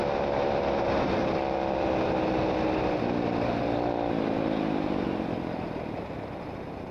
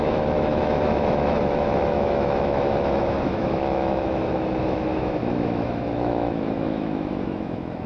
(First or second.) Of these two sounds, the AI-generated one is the second